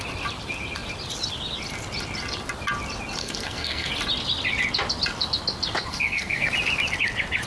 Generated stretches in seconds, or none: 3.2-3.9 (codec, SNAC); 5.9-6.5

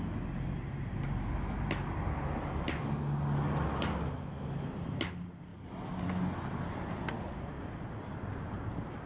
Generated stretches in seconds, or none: none

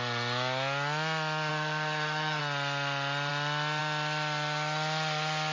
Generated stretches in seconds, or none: 1.5-2.4 (codec, SNAC)

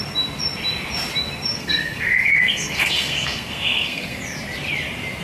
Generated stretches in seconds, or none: 1.5-4.2 (codec, SNAC)

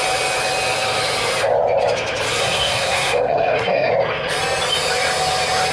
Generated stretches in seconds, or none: 2.4-3.9 (codec, SNAC)

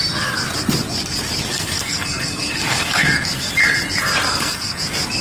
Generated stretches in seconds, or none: 1.5-3.5 (codec, SNAC); 4.3-4.8